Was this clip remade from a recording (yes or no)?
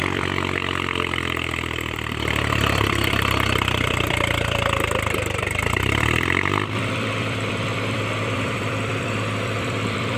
yes